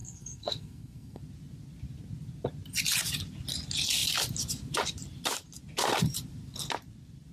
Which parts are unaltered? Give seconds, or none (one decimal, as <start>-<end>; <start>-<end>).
1.2-7.3